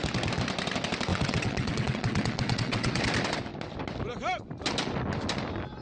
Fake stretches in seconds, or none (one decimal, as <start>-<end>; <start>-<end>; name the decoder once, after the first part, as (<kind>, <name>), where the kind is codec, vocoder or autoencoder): 1.1-3.0 (vocoder, WaveNeXt)